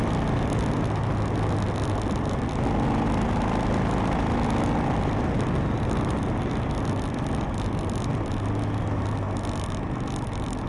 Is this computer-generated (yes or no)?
no